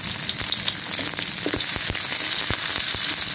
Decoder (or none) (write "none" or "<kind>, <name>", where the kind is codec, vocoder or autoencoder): none